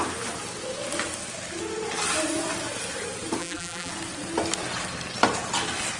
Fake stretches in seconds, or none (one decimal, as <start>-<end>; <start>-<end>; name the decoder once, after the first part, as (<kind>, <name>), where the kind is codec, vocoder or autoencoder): 3.4-3.9 (vocoder, BigVGAN v2)